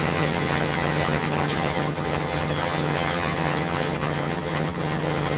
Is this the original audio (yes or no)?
no